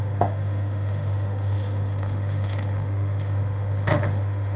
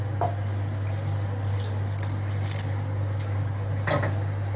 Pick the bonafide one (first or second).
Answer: second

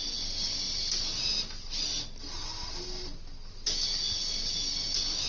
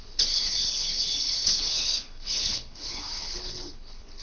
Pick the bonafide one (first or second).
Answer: first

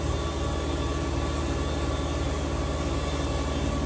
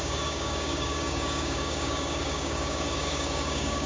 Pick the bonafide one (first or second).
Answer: first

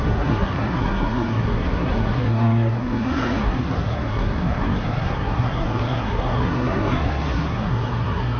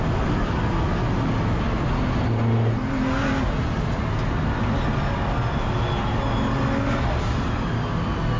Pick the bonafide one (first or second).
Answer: second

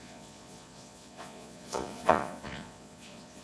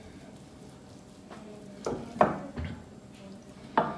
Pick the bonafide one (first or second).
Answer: second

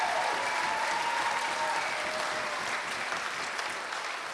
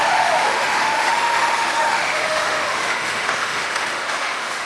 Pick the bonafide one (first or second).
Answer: first